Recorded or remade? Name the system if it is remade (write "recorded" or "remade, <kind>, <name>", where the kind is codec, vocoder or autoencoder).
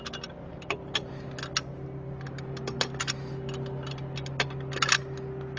recorded